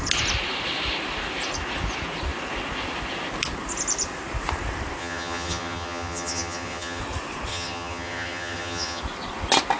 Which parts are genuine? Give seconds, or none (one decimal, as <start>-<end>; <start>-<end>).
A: 0.0-5.0; 7.0-7.5; 9.0-9.8